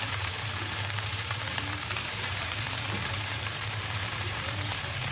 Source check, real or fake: fake